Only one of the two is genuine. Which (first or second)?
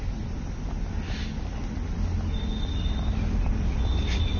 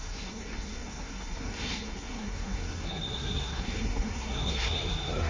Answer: first